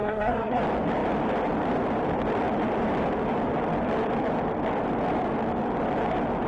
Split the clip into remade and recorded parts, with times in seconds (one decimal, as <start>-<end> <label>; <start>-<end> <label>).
0.0-0.6 remade; 0.6-6.5 recorded